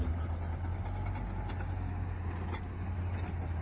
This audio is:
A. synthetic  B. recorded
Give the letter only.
B